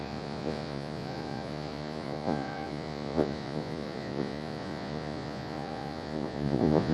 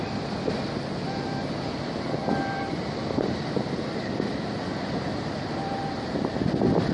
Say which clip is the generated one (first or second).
first